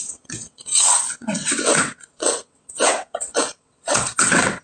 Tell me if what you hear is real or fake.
fake